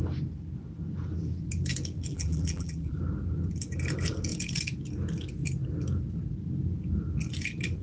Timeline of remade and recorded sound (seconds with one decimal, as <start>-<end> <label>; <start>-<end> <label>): 0.0-2.1 recorded; 2.1-3.0 remade; 3.0-7.8 recorded